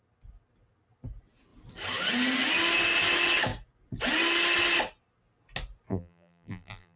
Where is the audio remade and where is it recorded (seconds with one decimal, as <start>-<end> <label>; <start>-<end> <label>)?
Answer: 0.0-5.9 recorded; 5.9-7.0 remade